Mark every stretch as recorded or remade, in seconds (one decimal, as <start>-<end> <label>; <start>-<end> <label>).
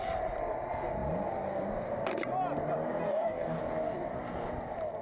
0.0-3.0 recorded; 3.0-3.6 remade; 3.6-5.0 recorded